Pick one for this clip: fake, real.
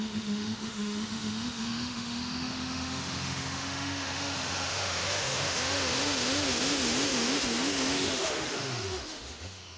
fake